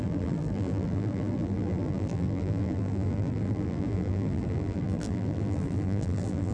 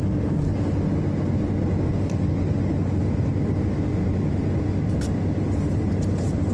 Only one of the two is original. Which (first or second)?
second